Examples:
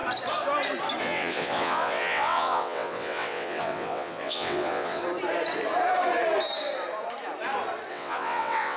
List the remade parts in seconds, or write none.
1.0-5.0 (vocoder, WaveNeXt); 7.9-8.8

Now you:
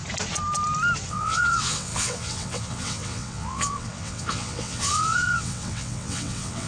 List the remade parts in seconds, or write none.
1.1-6.7 (vocoder, WaveNeXt)

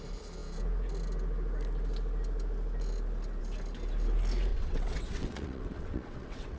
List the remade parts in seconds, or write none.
4.5-6.6 (vocoder, WaveNeXt)

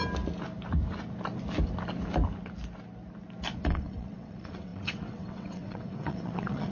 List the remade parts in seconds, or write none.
3.7-6.7 (vocoder, WaveNeXt)

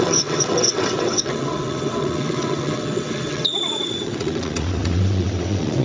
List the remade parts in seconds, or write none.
0.0-5.8 (vocoder, WaveNeXt)

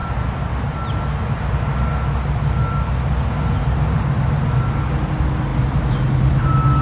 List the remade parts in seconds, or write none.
none